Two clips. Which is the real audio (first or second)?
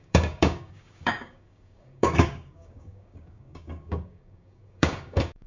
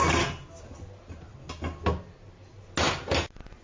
second